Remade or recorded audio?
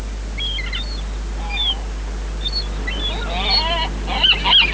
recorded